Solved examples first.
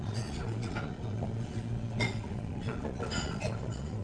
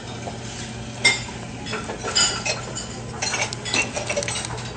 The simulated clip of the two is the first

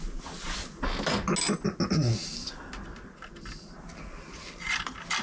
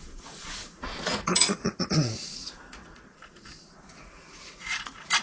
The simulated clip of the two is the second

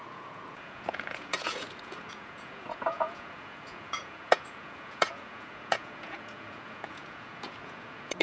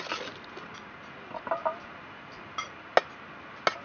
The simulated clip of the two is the first